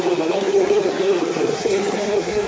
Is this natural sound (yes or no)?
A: no